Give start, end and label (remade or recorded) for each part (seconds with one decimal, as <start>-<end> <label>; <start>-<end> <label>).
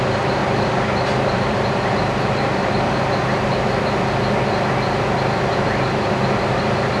0.0-0.4 recorded; 0.4-2.7 remade; 2.7-7.0 recorded